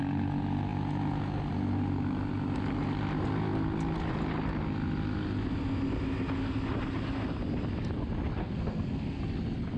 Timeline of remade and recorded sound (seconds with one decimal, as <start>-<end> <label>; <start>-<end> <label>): 0.0-8.4 recorded; 8.4-9.2 remade; 9.2-9.8 recorded

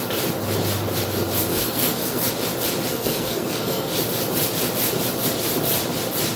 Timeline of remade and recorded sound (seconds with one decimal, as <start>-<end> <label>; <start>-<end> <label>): 0.0-1.5 recorded; 1.5-2.3 remade; 2.3-2.9 recorded; 2.9-3.9 remade; 3.9-6.4 recorded